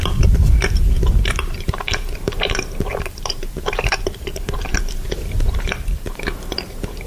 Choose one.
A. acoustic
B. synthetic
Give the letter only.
B